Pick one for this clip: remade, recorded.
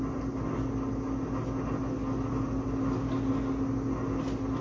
recorded